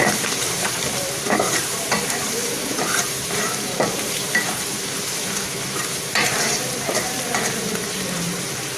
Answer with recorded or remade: remade